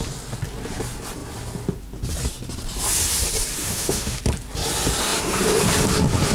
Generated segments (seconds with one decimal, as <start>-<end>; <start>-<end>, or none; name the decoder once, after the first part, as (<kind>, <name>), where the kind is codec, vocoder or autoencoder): 3.6-4.2 (autoencoder, DAC-VAE)